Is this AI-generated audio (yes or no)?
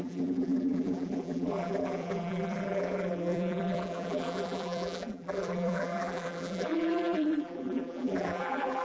yes